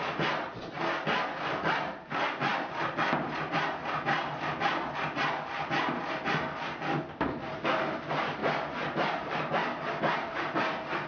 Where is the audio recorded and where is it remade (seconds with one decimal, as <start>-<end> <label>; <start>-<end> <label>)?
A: 0.0-11.1 recorded